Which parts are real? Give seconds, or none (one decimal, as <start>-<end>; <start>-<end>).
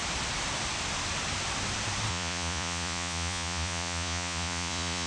0.0-2.1